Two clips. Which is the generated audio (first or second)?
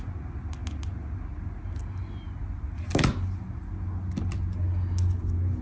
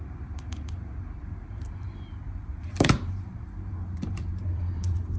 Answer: second